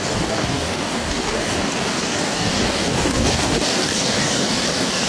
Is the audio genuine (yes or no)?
no